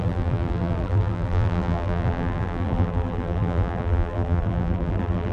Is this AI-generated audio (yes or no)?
yes